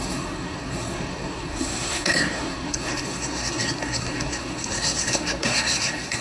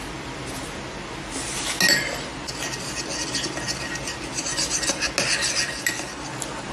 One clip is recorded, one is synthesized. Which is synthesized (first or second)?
first